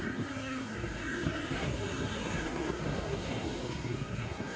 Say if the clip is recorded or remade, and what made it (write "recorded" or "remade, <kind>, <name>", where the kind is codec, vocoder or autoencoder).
remade, codec, SNAC